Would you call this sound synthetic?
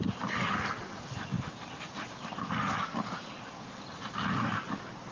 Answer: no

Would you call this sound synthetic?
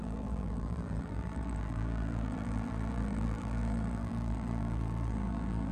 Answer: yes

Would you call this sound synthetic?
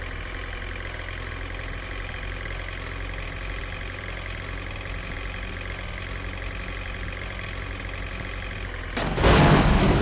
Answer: no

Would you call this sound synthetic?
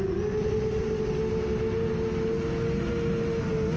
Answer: no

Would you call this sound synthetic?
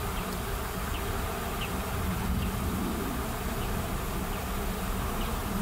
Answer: no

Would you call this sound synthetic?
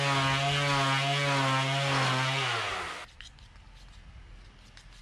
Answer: no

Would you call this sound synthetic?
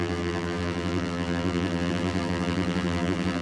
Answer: yes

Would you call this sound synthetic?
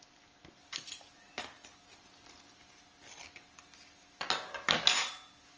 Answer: no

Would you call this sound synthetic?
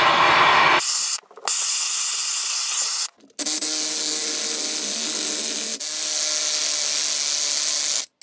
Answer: no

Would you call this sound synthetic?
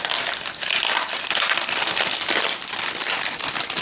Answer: no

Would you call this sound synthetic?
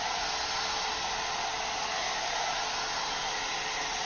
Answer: no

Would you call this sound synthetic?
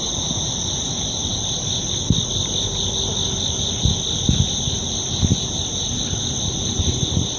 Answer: no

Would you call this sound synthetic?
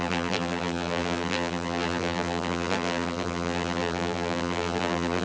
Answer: yes